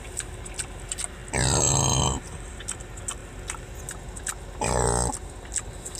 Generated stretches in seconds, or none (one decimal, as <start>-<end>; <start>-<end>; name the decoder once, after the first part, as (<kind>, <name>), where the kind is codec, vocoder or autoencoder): none